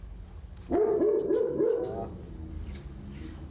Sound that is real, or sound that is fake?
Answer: fake